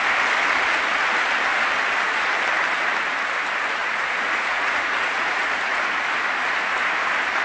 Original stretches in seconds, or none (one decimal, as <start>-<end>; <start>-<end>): 0.0-3.8; 6.0-7.4